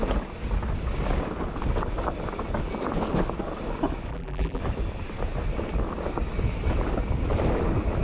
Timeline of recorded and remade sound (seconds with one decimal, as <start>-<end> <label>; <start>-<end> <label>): 0.0-4.1 recorded; 4.1-4.6 remade; 4.6-8.0 recorded